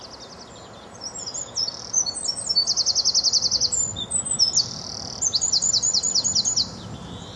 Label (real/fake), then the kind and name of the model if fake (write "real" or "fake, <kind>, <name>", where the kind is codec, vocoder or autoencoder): real